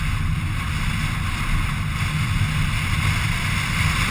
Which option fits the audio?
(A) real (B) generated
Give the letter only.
A